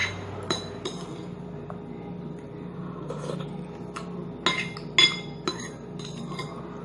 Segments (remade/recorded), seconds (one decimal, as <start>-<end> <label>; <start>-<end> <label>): 0.0-3.1 remade; 3.1-6.8 recorded